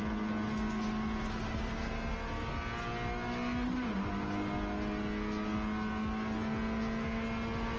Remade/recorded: recorded